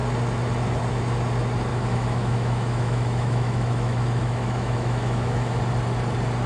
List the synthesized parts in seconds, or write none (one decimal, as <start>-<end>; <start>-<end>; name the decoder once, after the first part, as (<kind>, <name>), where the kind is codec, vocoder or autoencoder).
1.7-5.6 (autoencoder, DAC-VAE)